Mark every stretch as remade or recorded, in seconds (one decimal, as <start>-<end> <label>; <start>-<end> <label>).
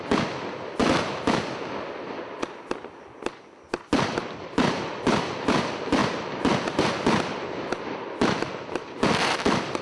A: 0.0-0.8 remade; 0.8-4.4 recorded; 4.4-6.0 remade; 6.0-7.3 recorded; 7.3-9.8 remade